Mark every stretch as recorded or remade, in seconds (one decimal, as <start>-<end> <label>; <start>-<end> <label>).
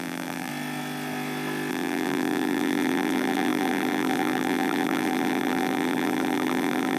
0.0-0.5 remade; 0.5-1.7 recorded; 1.7-7.0 remade